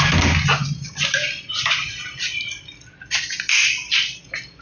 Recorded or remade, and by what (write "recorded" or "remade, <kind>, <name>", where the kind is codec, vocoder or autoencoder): recorded